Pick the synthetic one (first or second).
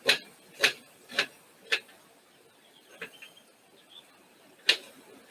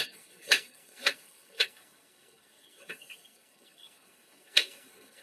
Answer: second